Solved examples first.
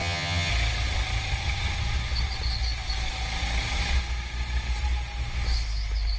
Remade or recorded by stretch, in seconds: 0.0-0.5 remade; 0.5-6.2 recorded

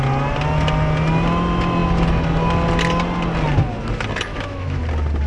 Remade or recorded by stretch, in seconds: 0.0-4.3 recorded; 4.3-4.8 remade; 4.8-5.3 recorded

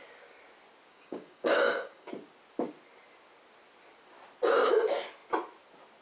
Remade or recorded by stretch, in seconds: 0.0-0.9 recorded; 0.9-2.1 remade; 2.1-6.0 recorded

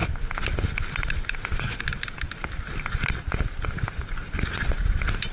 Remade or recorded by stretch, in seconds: 0.0-5.3 recorded